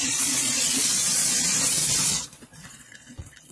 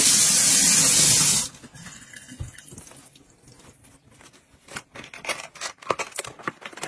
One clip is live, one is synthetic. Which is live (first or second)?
second